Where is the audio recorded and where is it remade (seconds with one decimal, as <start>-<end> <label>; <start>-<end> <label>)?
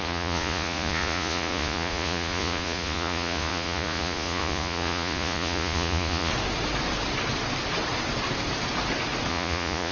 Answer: 0.0-6.3 remade; 6.3-9.3 recorded; 9.3-9.9 remade